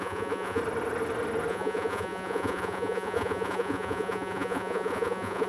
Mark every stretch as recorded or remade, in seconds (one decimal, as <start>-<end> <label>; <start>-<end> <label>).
0.0-0.6 remade; 0.6-1.5 recorded; 1.5-5.5 remade